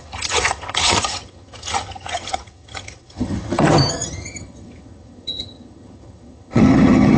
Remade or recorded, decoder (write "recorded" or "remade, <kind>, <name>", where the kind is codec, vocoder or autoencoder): remade, vocoder, HiFi-GAN